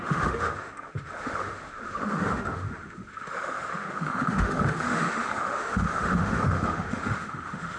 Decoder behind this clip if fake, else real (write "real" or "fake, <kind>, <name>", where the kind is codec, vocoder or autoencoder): fake, autoencoder, DAC-VAE